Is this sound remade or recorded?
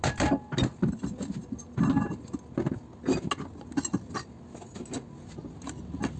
recorded